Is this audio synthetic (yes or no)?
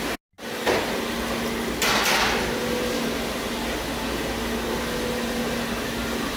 no